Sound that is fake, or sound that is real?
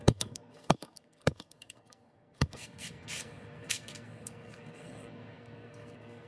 fake